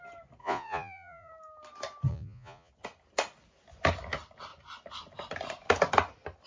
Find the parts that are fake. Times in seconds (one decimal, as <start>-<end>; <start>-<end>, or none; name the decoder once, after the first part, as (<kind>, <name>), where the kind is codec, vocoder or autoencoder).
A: 0.4-1.3 (vocoder, Vocos); 2.1-2.7